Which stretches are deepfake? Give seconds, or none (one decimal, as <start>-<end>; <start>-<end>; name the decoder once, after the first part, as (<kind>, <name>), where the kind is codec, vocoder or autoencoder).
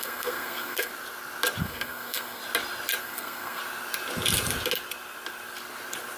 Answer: 0.0-0.9 (codec, SNAC); 1.6-2.4; 3.0-3.6